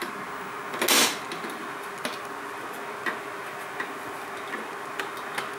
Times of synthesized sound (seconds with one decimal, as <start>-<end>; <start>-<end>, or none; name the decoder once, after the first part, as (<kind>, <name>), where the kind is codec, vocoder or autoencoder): none